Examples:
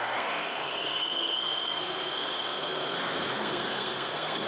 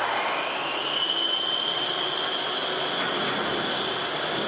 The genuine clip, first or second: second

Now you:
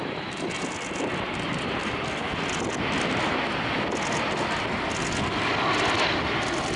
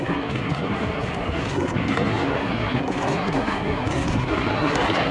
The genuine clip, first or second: first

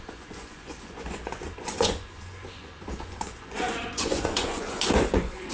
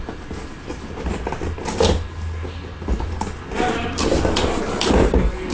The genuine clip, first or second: second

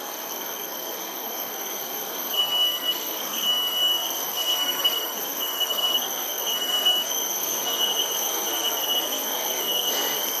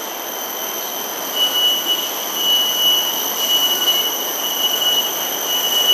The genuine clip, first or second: second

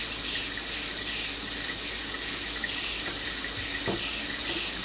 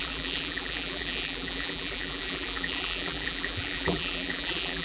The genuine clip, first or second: first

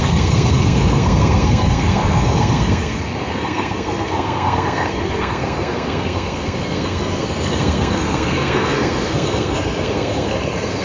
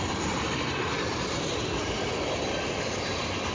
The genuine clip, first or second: second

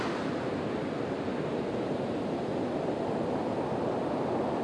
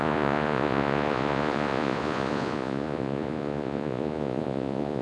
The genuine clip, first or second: first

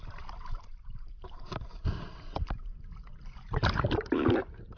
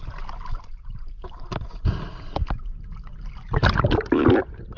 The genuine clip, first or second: second